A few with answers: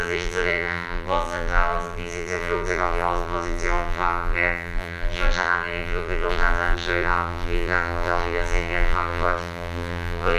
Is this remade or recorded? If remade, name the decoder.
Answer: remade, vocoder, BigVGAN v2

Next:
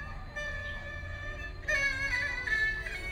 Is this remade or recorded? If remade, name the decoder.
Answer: recorded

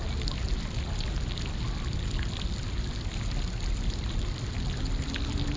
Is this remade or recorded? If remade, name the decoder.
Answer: recorded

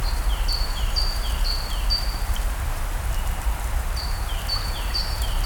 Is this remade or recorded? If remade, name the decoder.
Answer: remade, vocoder, BigVGAN v2